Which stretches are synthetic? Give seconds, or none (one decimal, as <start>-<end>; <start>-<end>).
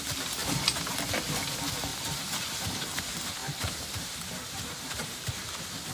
1.9-3.0; 3.4-5.3